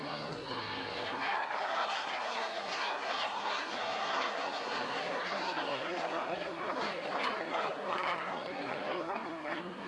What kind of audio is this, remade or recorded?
remade